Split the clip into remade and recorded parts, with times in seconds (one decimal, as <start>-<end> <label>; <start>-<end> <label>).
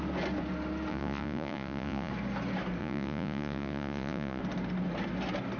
0.0-0.9 recorded; 0.9-2.1 remade; 2.1-2.8 recorded; 2.8-4.4 remade; 4.4-5.6 recorded